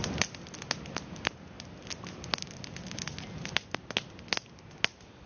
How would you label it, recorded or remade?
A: recorded